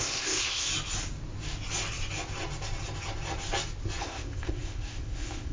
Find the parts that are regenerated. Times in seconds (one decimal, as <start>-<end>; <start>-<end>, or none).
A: 0.0-0.7; 4.0-5.5